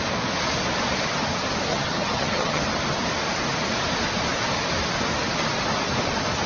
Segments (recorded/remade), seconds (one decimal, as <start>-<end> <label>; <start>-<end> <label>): 0.0-1.7 recorded; 1.7-2.6 remade; 2.6-6.5 recorded